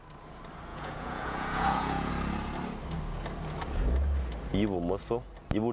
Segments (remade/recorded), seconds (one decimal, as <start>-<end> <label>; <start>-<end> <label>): 0.0-0.7 recorded; 0.7-2.1 remade; 2.1-5.7 recorded